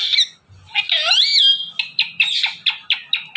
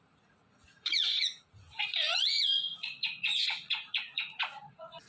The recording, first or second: first